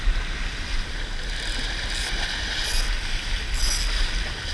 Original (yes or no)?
yes